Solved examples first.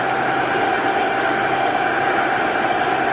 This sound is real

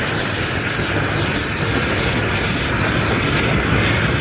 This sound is real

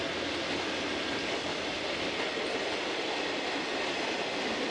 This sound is real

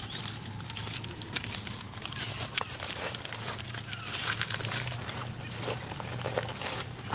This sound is fake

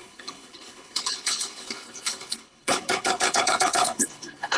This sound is fake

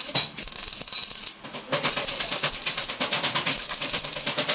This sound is real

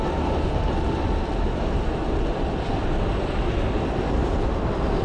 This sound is real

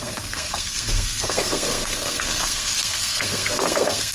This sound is fake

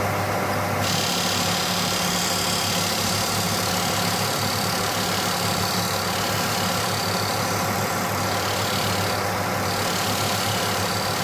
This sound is real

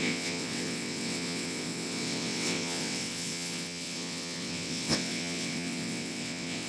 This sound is fake